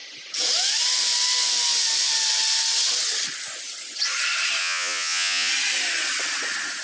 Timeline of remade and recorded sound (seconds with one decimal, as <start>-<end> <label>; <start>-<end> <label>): 0.0-4.6 recorded; 4.6-5.5 remade; 5.5-6.8 recorded